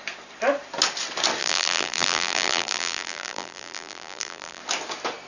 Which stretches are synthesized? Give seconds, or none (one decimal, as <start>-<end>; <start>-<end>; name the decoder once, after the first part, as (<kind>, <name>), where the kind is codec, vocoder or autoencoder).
1.4-4.6 (vocoder, BigVGAN v2)